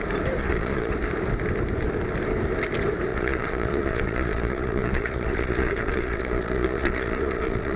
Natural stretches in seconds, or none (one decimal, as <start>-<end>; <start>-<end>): 0.0-0.4; 0.9-3.1